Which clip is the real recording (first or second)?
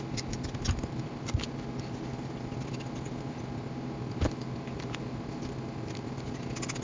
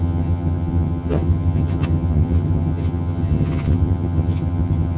first